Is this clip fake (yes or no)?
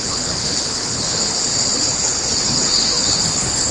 yes